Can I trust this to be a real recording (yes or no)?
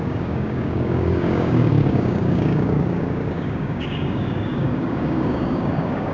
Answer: no